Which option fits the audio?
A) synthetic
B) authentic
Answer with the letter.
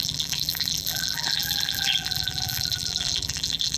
A